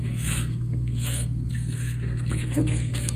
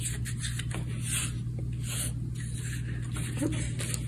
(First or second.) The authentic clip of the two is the second